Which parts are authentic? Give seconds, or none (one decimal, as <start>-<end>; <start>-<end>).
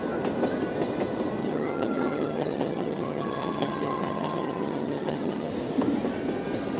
0.0-1.4; 5.5-6.8